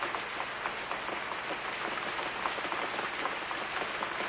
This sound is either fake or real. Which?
real